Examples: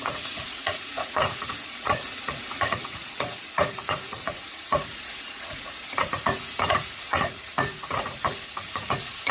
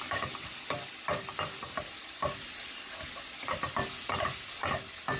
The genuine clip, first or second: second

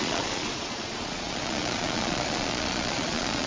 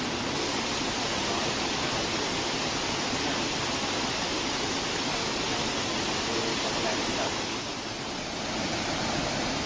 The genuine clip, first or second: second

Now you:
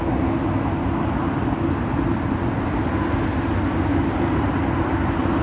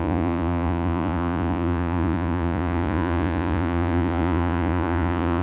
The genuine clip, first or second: first